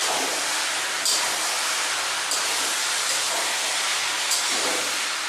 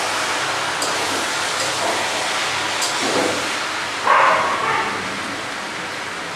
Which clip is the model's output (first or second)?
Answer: first